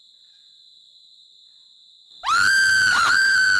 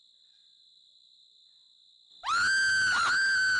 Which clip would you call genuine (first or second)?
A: second